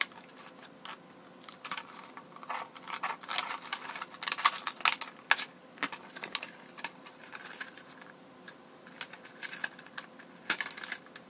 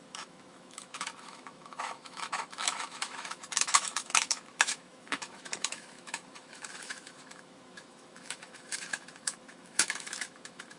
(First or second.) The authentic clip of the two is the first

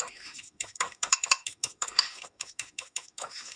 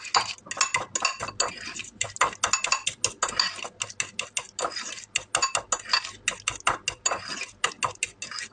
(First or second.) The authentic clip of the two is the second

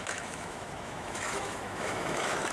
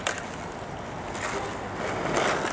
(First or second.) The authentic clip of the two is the second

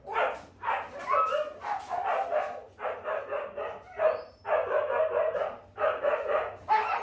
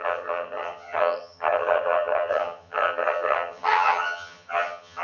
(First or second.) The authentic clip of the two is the first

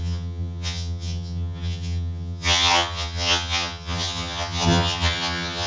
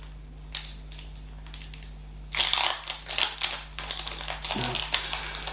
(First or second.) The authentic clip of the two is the second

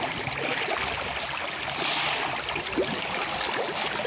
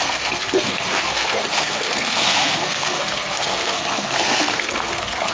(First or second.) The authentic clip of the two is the first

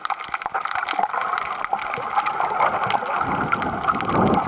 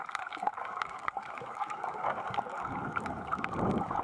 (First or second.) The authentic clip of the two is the first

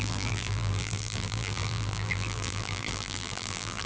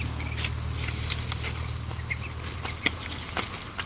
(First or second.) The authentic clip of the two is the second